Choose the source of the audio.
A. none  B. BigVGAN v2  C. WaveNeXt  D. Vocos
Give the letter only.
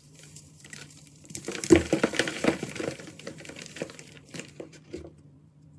B